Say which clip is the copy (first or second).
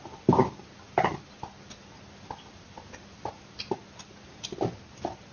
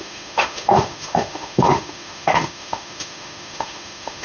second